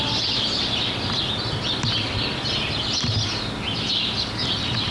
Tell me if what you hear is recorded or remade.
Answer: recorded